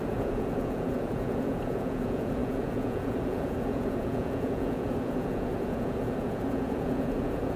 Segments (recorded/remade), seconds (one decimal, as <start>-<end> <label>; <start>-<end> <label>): 0.0-7.6 remade

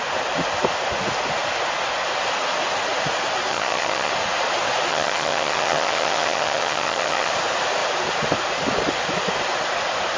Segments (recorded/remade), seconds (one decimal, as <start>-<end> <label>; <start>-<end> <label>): 0.0-3.5 recorded; 3.5-4.1 remade; 4.1-4.9 recorded; 4.9-7.3 remade; 7.3-10.2 recorded

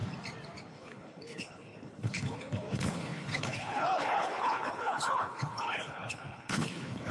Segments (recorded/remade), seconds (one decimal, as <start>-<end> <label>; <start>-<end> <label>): 0.0-0.6 recorded; 0.6-7.1 remade

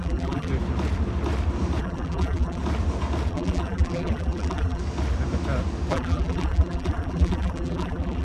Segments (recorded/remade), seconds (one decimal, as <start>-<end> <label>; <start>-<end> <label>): 0.0-0.5 remade; 0.5-1.8 recorded; 1.8-2.6 remade; 2.6-3.3 recorded; 3.3-4.8 remade; 4.8-5.9 recorded; 5.9-8.2 remade